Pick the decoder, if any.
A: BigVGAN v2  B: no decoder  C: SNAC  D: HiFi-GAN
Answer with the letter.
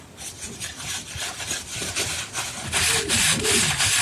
A